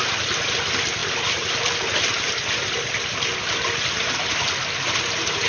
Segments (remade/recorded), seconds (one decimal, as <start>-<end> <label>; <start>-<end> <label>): 0.0-5.5 recorded